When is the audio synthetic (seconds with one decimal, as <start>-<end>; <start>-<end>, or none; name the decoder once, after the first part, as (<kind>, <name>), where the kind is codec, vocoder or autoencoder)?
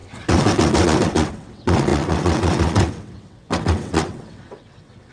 0.0-5.1 (vocoder, WaveNeXt)